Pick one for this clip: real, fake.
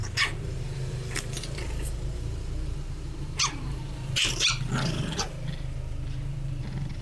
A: fake